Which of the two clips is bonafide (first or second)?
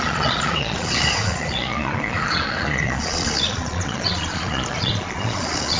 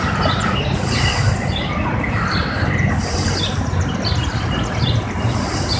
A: second